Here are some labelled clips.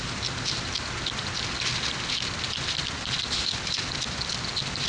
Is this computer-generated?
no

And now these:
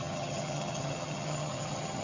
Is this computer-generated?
yes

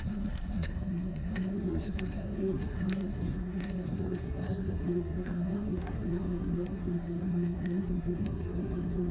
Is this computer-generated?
yes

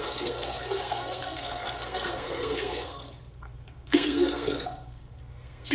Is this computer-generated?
yes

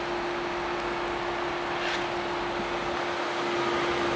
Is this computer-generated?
no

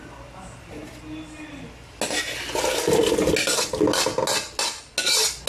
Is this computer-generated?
no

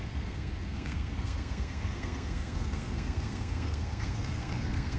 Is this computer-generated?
yes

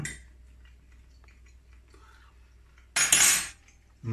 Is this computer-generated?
no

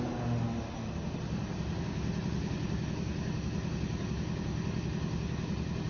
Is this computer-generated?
no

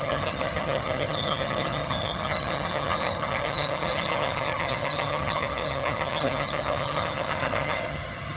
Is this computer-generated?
yes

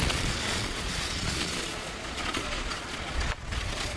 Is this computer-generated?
yes